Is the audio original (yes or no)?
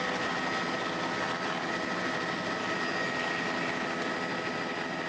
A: yes